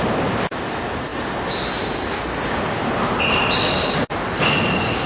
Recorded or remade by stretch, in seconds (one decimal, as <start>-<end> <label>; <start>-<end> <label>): 0.0-5.1 recorded